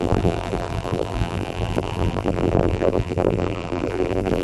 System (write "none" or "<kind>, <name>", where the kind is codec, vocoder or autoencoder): vocoder, BigVGAN v2